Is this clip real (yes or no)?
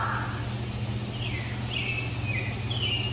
yes